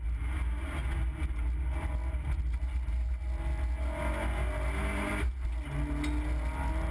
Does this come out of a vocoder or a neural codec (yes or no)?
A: no